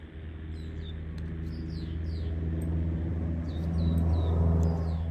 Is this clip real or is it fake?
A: real